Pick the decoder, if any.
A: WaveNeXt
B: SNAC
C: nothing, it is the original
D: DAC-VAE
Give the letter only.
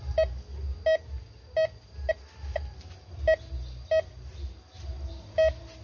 C